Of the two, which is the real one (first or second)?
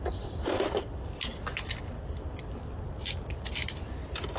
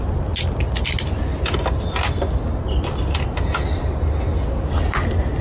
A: second